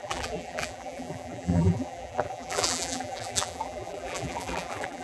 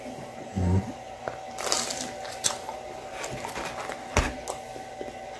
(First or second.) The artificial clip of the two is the first